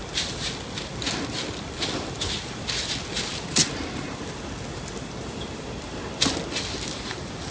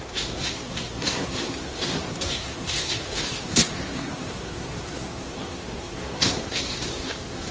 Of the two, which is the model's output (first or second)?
second